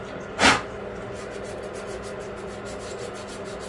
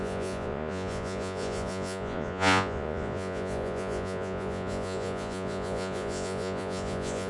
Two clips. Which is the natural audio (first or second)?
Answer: first